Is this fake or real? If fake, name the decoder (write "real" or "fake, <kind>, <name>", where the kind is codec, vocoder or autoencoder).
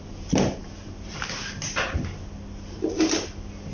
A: real